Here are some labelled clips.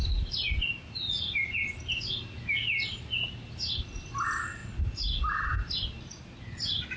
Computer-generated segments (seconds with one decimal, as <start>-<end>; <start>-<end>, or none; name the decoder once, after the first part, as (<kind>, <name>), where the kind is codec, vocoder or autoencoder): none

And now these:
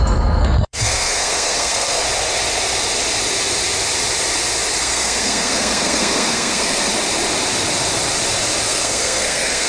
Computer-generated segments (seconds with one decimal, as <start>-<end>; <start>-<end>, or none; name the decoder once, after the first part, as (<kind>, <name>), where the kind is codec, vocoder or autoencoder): 0.0-2.0 (codec, SNAC); 4.8-6.9; 8.7-9.7

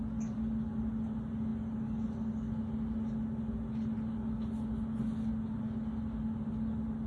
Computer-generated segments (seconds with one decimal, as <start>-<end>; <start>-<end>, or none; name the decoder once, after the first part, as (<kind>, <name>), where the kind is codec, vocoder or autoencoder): none

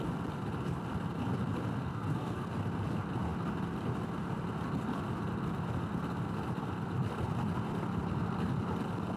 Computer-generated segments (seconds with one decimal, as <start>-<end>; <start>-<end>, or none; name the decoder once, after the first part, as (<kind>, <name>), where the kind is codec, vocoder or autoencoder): 1.9-2.5 (codec, SNAC)

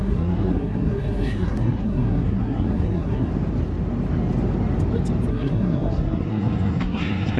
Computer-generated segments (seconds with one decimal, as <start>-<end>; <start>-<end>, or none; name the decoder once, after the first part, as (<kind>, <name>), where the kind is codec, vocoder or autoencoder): 0.0-3.3 (codec, SNAC); 5.3-7.4